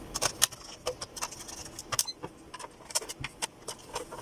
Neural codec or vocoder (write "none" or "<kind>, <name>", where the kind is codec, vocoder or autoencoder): none